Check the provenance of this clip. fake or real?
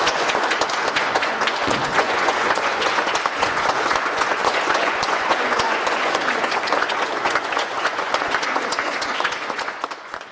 fake